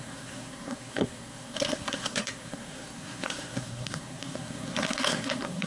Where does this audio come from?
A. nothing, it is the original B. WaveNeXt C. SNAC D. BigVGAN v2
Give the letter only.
C